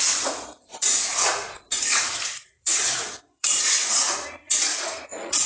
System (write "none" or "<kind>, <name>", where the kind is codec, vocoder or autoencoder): vocoder, Vocos